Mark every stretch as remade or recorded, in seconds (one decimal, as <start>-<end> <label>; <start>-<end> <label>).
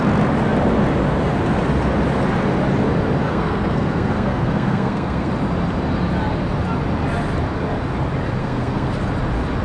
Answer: 0.0-3.3 recorded; 3.3-5.3 remade; 5.3-8.4 recorded; 8.4-8.9 remade; 8.9-9.6 recorded